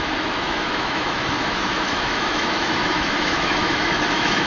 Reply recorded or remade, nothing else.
remade